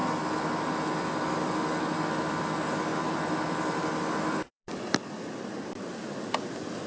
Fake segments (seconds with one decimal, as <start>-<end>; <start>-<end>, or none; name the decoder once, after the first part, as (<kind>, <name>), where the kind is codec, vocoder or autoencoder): none